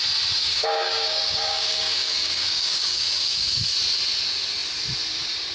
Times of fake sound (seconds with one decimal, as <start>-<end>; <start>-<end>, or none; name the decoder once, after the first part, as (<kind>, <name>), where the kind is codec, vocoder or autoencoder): 0.4-3.7 (codec, DAC)